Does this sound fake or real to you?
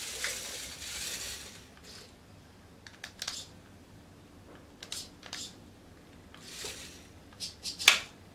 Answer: real